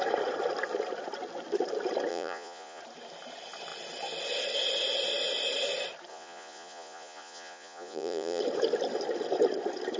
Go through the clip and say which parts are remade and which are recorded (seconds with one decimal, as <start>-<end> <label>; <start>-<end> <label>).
0.0-2.1 recorded; 2.1-2.8 remade; 2.8-6.1 recorded; 6.1-8.4 remade; 8.4-10.0 recorded